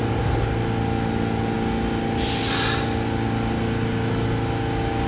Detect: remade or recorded recorded